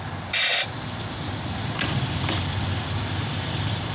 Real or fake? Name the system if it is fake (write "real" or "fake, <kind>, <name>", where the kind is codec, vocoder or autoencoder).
real